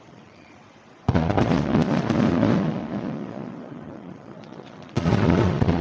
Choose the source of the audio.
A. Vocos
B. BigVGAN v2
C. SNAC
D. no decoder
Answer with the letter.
A